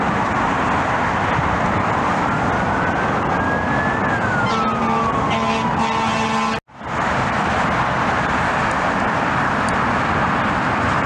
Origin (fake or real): real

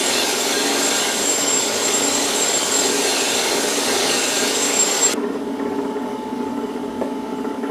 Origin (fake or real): fake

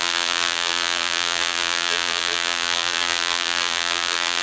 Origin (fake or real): fake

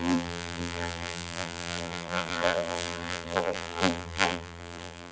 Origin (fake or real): fake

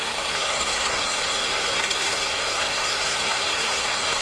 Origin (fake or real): fake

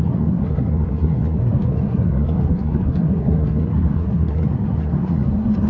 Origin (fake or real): fake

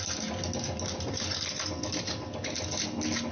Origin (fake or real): real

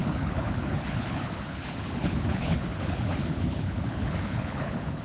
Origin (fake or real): fake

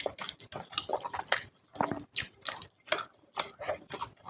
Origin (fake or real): real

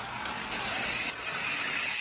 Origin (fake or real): real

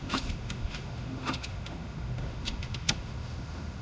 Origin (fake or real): fake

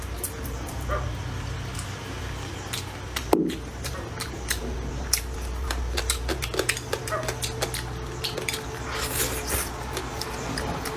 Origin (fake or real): real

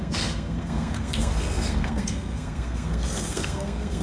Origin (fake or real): fake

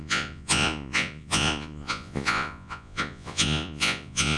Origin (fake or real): fake